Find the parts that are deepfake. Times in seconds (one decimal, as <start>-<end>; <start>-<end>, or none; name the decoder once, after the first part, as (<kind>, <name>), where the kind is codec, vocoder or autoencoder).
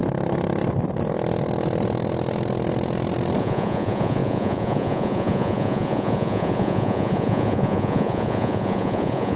3.4-9.4 (vocoder, Vocos)